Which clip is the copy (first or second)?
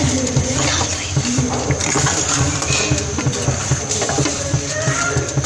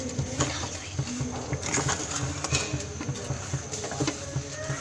first